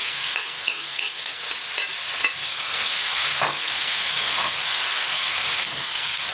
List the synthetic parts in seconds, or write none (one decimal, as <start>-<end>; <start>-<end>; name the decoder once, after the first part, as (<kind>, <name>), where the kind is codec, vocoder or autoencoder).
0.0-1.4 (codec, SNAC); 2.4-6.3